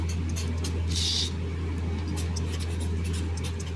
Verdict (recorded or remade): recorded